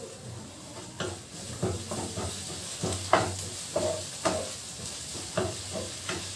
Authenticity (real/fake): real